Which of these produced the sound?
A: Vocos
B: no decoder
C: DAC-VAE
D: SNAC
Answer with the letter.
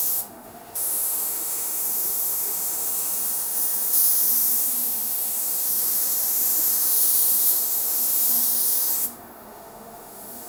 C